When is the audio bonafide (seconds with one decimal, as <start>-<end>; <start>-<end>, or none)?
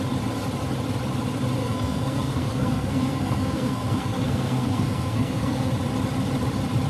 0.0-1.6; 5.7-6.9